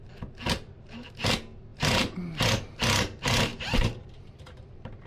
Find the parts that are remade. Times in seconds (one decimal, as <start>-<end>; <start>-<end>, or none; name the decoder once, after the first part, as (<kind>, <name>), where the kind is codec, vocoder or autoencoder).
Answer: 1.7-2.3 (vocoder, BigVGAN v2); 3.5-5.1